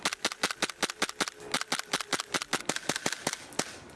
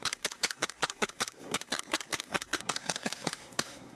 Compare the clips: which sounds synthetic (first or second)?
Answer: second